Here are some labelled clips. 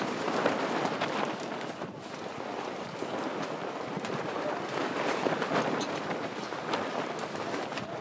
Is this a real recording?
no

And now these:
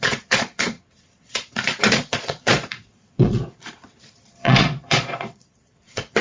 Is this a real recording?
no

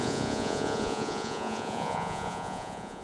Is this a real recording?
no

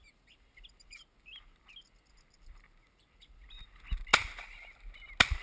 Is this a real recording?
yes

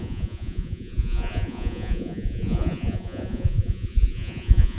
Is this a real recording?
no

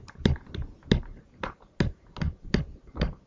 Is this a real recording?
yes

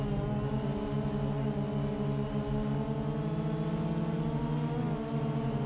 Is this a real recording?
yes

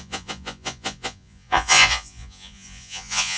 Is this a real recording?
no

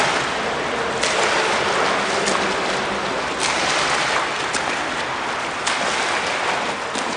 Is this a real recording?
yes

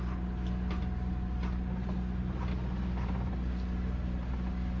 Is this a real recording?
yes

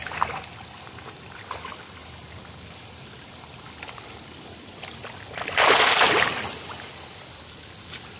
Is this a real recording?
yes